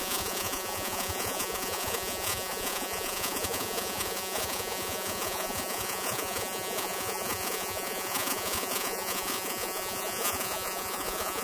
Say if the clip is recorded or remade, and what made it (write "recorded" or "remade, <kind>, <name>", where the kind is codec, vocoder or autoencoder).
remade, vocoder, Vocos